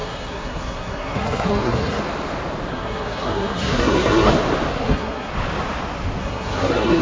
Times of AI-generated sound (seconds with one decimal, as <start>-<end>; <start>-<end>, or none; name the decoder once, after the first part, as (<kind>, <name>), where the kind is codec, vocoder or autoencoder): 0.0-2.0 (codec, SNAC); 2.7-4.3; 4.7-5.3; 6.2-7.0